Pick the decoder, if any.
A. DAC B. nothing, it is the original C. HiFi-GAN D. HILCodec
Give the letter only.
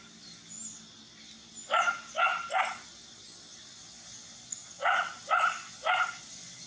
B